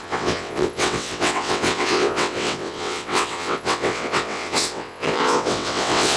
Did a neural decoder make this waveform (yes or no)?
yes